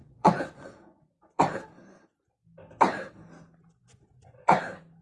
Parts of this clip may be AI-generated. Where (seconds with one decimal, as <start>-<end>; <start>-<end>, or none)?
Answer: 0.0-1.4; 3.9-4.6